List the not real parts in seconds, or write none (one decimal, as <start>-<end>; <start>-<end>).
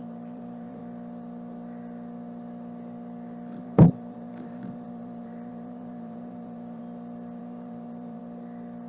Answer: 0.0-0.8; 3.6-6.8; 7.4-8.2